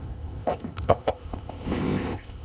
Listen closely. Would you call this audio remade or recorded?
remade